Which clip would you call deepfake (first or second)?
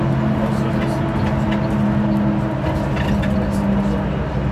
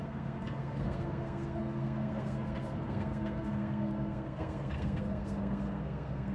second